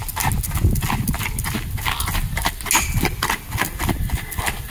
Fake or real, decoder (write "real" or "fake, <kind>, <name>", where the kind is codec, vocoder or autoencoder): real